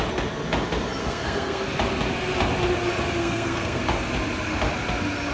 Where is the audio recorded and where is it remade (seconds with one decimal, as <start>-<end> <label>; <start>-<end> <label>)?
0.0-1.0 recorded; 1.0-1.7 remade; 1.7-3.2 recorded; 3.2-3.8 remade; 3.8-5.3 recorded